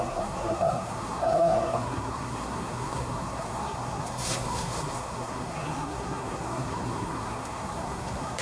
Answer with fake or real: fake